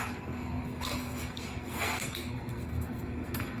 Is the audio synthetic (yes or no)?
yes